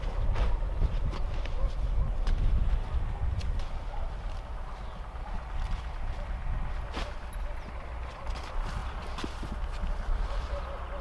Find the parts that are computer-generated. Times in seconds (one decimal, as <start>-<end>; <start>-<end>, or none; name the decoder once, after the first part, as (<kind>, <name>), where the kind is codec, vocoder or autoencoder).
none